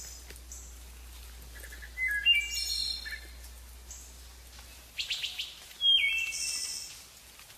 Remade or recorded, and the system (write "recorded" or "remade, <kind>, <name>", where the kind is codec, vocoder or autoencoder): recorded